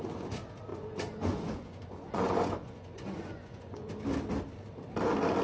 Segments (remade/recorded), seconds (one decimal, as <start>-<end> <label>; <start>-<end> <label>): 0.0-0.7 recorded; 0.7-3.9 remade; 3.9-5.4 recorded